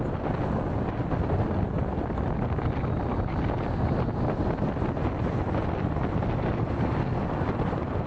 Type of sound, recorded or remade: recorded